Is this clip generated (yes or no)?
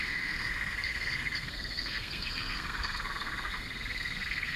yes